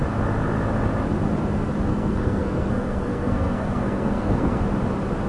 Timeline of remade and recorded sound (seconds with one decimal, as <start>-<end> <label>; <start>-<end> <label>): 0.0-1.9 recorded; 1.9-4.6 remade; 4.6-5.3 recorded